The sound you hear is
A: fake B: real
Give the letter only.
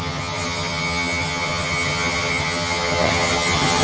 A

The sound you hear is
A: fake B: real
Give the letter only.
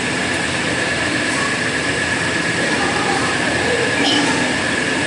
A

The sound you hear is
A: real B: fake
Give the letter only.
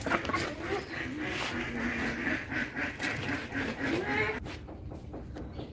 A